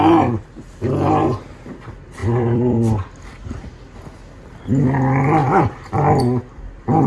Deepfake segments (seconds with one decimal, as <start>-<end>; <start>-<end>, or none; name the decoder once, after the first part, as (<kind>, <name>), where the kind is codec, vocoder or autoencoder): 2.2-3.7 (vocoder, BigVGAN v2); 5.4-6.2